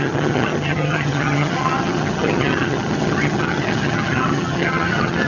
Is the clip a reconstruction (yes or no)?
yes